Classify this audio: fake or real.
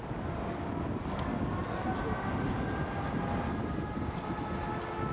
real